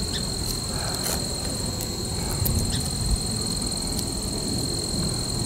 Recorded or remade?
recorded